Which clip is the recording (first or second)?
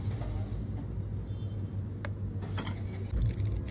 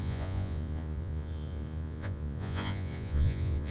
first